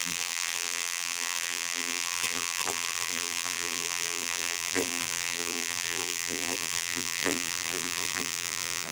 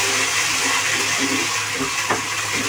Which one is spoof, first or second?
first